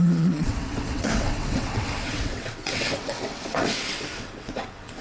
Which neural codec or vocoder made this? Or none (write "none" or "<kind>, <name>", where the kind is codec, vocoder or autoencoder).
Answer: vocoder, WaveNeXt